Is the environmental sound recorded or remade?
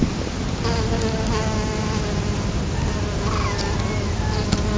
recorded